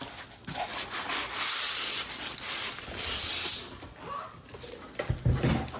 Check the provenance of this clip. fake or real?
real